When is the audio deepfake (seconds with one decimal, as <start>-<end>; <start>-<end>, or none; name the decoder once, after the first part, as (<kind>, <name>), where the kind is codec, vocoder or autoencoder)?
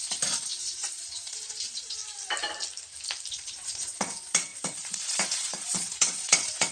0.0-2.0 (vocoder, Vocos); 3.3-6.7